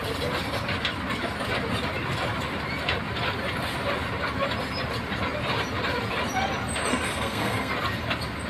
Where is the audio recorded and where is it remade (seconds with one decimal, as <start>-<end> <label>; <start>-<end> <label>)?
0.0-6.9 recorded; 6.9-7.7 remade; 7.7-8.5 recorded